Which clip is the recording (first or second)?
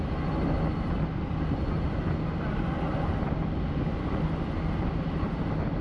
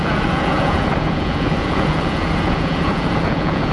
first